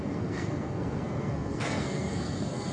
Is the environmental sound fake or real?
fake